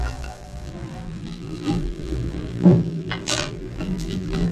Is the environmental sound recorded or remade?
remade